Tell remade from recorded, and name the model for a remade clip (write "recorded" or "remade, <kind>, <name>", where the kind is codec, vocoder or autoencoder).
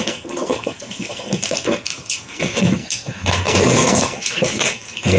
remade, codec, SNAC